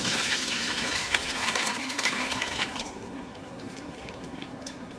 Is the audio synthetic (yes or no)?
yes